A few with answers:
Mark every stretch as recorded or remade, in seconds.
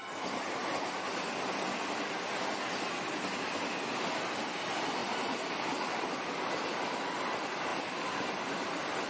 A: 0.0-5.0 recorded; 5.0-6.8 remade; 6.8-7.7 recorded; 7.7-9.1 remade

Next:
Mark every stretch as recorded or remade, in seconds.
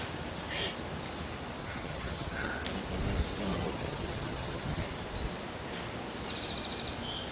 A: 0.0-1.6 recorded; 1.6-2.5 remade; 2.5-3.5 recorded; 3.5-4.8 remade; 4.8-7.3 recorded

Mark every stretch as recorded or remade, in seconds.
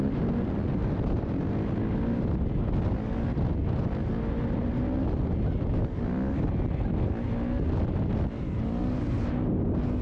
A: 0.0-0.8 recorded; 0.8-1.4 remade; 1.4-3.6 recorded; 3.6-4.1 remade; 4.1-10.0 recorded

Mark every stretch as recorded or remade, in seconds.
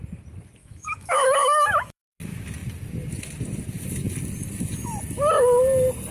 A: 0.0-0.6 recorded; 0.6-2.2 remade; 2.2-6.1 recorded